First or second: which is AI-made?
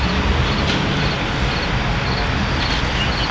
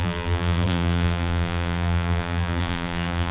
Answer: second